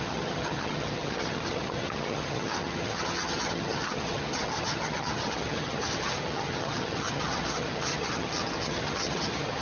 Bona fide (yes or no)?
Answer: no